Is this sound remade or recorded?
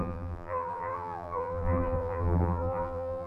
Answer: remade